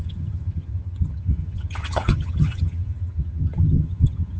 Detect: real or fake fake